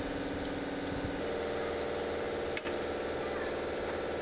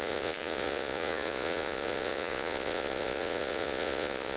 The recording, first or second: first